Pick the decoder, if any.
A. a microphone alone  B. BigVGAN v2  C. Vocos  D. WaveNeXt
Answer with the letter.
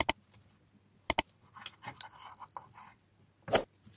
A